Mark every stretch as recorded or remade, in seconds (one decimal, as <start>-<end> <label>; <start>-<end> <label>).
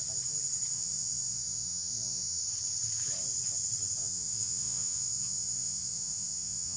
0.0-0.7 recorded; 0.7-2.4 remade; 2.4-4.0 recorded; 4.0-6.8 remade